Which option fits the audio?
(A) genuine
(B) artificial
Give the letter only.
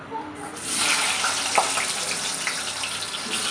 A